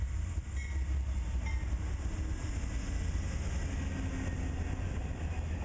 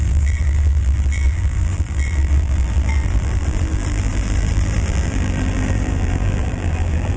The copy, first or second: second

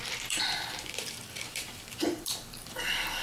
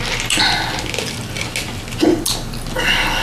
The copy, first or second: first